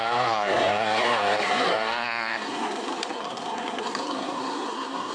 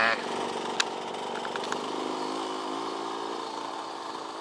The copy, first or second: first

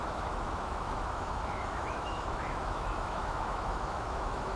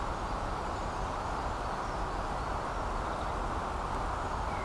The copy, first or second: first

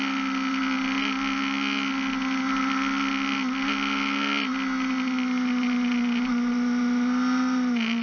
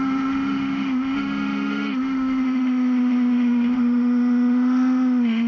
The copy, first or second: second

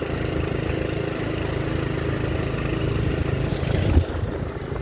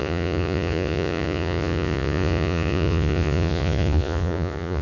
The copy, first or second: second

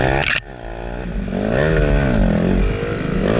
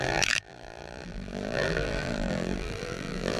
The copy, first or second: second